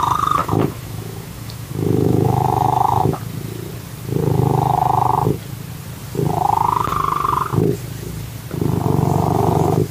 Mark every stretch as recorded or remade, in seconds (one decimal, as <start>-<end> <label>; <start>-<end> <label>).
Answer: 0.0-0.4 recorded; 0.4-3.2 remade; 3.2-9.9 recorded